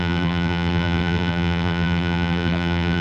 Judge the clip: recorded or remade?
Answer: remade